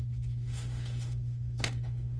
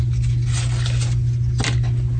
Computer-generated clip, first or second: first